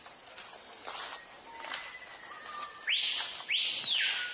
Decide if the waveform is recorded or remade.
recorded